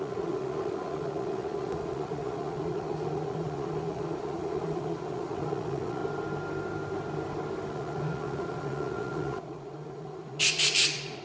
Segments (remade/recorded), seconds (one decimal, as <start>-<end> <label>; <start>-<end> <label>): 0.0-6.0 remade; 6.0-7.7 recorded; 7.7-11.2 remade